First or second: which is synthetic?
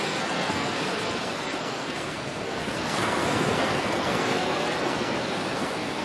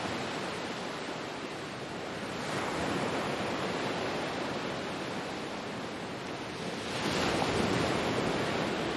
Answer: first